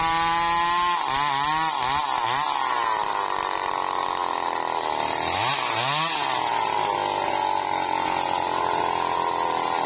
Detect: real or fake real